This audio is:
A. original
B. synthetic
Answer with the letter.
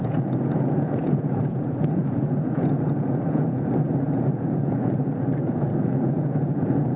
B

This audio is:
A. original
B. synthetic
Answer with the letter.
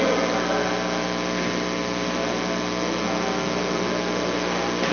A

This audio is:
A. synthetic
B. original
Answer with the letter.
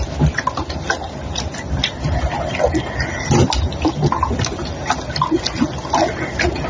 B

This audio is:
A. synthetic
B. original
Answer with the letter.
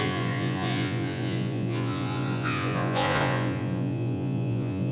A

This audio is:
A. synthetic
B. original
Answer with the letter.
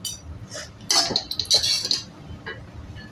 B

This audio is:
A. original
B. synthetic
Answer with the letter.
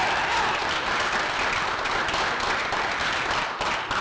A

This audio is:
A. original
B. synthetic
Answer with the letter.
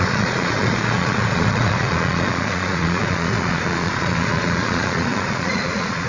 B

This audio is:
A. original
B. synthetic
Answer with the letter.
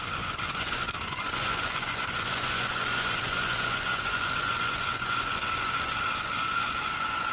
B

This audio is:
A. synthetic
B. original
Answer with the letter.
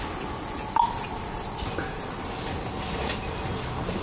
B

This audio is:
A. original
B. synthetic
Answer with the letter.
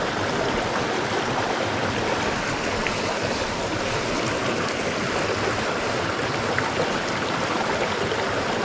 A